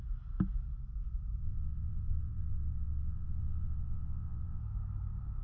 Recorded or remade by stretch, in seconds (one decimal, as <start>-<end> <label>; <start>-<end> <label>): 0.0-1.4 recorded; 1.4-4.6 remade; 4.6-5.4 recorded